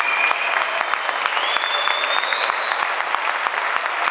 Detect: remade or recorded recorded